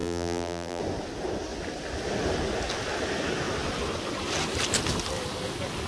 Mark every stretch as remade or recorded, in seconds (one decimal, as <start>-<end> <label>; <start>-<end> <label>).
0.0-0.8 remade; 0.8-5.9 recorded